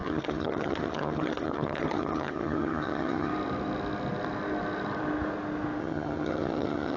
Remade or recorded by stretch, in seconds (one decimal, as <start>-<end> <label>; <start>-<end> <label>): 0.0-3.3 remade; 3.3-5.8 recorded; 5.8-7.0 remade